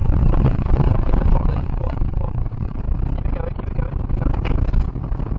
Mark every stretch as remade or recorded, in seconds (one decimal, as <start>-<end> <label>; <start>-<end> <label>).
0.0-2.8 remade; 2.8-5.4 recorded